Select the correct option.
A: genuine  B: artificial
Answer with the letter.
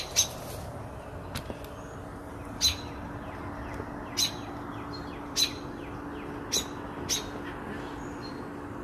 A